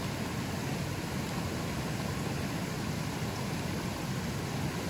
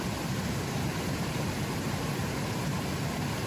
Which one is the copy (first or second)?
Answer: second